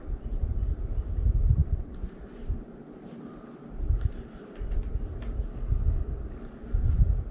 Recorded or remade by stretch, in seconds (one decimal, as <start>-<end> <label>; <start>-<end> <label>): 0.0-5.5 recorded; 5.5-6.2 remade; 6.2-7.3 recorded